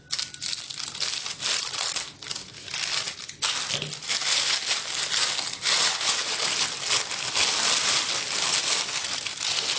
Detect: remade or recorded recorded